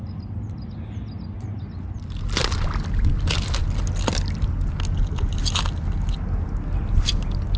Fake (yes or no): no